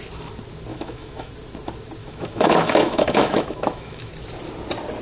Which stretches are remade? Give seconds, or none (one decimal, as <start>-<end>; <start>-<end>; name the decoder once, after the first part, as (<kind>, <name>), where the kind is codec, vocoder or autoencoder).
0.7-1.3 (autoencoder, DAC-VAE); 2.0-4.1